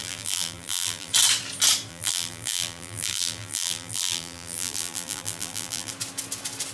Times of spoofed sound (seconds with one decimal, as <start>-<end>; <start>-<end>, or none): 0.0-1.1; 1.9-5.9